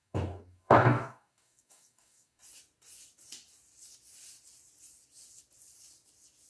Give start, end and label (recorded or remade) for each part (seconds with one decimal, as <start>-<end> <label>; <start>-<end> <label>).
0.0-2.4 remade; 2.4-6.5 recorded